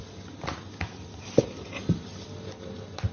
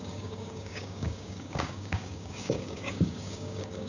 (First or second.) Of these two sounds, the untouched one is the first